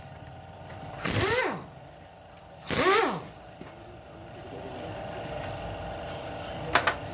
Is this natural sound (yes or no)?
yes